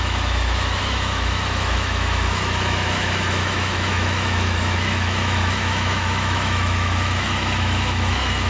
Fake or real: fake